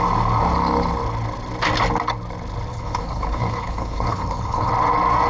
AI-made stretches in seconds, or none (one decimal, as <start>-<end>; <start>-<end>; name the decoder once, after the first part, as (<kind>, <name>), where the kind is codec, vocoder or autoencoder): 2.7-4.7 (codec, HILCodec)